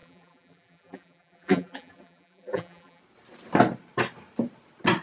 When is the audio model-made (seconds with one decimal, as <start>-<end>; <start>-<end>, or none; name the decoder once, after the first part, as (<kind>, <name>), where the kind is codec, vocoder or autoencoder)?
0.0-3.0 (vocoder, BigVGAN v2)